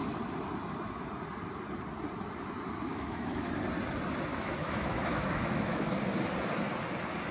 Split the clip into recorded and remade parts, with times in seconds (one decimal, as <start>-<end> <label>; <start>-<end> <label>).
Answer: 0.0-2.9 recorded; 2.9-3.5 remade; 3.5-4.3 recorded; 4.3-6.0 remade; 6.0-7.3 recorded